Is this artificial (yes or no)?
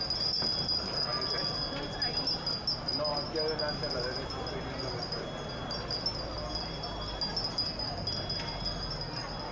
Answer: no